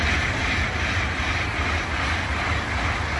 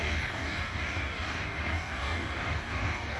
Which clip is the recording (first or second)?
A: first